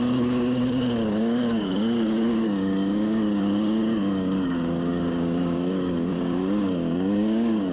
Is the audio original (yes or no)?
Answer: no